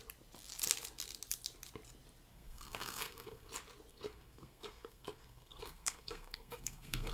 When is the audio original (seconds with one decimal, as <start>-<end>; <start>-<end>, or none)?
0.0-2.3; 3.5-3.9